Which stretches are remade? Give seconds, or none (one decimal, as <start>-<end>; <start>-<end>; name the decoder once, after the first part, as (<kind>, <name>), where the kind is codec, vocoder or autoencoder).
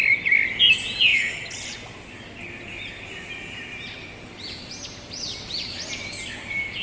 none